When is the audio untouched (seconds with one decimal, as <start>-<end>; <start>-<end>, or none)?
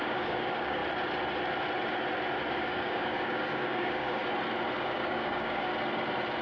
0.8-2.5; 4.2-4.8; 5.7-6.4